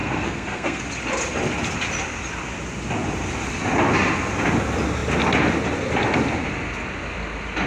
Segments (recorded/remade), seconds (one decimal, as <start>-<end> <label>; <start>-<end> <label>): 0.0-0.8 remade; 0.8-7.7 recorded